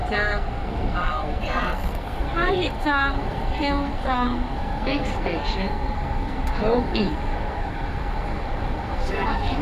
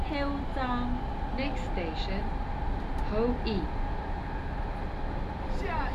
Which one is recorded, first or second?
second